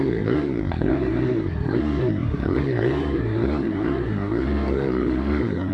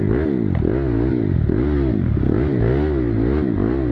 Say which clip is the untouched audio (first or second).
second